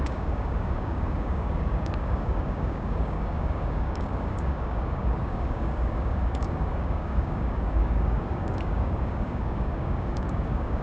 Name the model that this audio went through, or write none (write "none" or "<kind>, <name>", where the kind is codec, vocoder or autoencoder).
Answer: codec, DAC